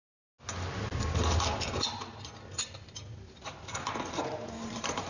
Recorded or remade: recorded